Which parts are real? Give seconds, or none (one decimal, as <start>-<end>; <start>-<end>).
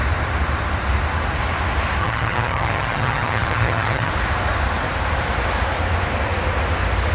0.0-2.0; 4.1-7.1